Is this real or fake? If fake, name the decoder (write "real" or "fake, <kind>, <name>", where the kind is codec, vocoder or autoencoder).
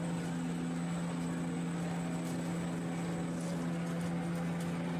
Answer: real